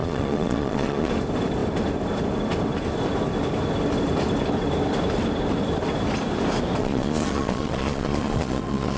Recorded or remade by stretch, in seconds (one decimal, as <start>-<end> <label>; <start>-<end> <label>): 0.0-1.1 remade; 1.1-6.8 recorded; 6.8-9.0 remade